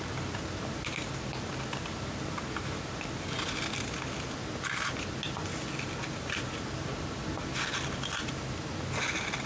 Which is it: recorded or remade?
recorded